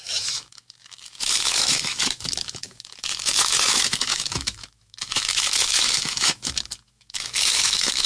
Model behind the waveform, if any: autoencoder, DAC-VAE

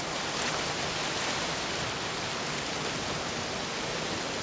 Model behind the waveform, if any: none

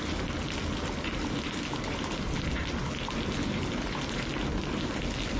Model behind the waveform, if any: none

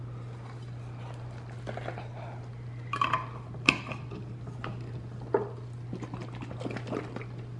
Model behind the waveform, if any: vocoder, BigVGAN v2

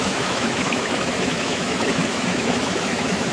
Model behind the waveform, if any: autoencoder, DAC-VAE